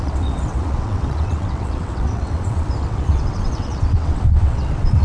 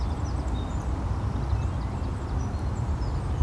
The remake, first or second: first